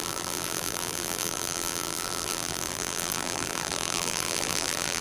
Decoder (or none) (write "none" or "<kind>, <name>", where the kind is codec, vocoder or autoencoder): vocoder, BigVGAN v2